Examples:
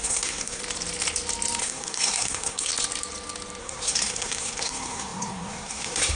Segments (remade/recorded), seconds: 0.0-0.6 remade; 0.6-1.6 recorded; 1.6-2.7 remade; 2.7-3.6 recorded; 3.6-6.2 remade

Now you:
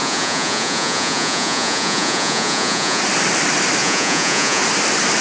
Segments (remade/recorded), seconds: 0.0-3.0 remade; 3.0-3.8 recorded; 3.8-4.6 remade; 4.6-5.2 recorded